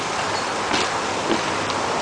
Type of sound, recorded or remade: recorded